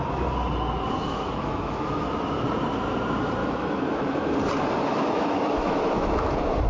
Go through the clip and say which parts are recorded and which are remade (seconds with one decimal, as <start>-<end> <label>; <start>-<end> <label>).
0.0-1.0 recorded; 1.0-2.1 remade; 2.1-3.4 recorded; 3.4-4.3 remade; 4.3-4.9 recorded; 4.9-6.3 remade; 6.3-6.7 recorded